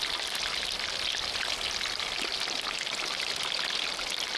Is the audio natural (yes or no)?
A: yes